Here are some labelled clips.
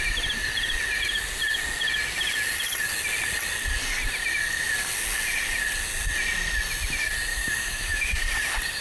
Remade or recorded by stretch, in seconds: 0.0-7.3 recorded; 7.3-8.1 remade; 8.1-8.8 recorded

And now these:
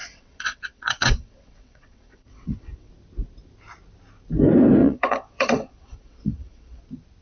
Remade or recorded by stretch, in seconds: 0.0-2.9 remade; 2.9-4.8 recorded; 4.8-6.8 remade; 6.8-7.2 recorded

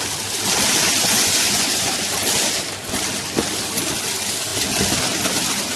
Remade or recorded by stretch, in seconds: 0.0-1.0 recorded; 1.0-1.9 remade; 1.9-5.8 recorded

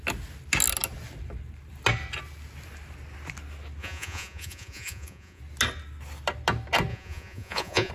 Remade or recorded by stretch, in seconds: 0.0-3.8 recorded; 3.8-5.4 remade; 5.4-6.9 recorded; 6.9-7.9 remade